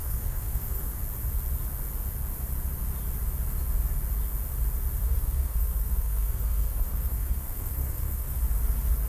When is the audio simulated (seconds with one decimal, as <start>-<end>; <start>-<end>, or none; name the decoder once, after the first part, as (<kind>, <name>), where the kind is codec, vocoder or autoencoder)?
0.0-1.0 (codec, SNAC); 5.0-8.4